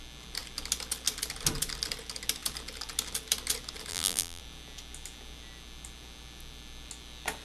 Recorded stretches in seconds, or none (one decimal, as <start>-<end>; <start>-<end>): 0.0-3.9; 4.4-7.4